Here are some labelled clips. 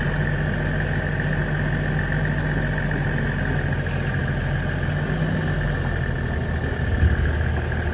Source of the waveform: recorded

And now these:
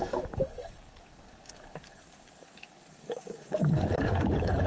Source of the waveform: remade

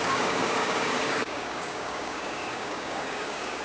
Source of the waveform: remade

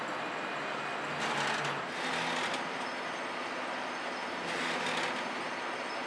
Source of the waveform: recorded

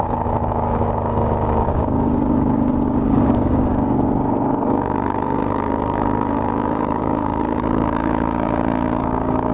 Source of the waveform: remade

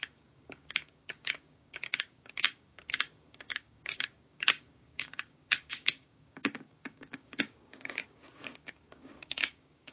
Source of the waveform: remade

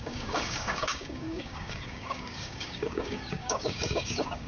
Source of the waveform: remade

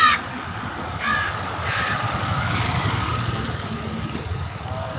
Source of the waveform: remade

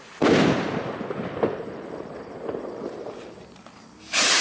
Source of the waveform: recorded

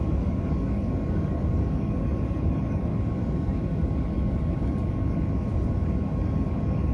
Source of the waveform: remade